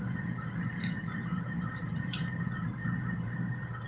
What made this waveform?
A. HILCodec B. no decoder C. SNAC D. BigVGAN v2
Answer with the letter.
D